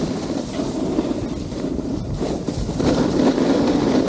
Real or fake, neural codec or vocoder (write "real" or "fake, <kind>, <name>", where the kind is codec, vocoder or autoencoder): real